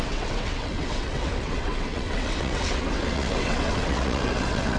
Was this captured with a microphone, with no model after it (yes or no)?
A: no